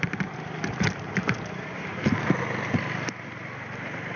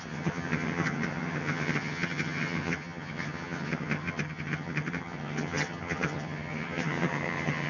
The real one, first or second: first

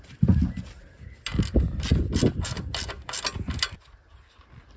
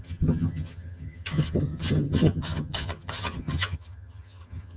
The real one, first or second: first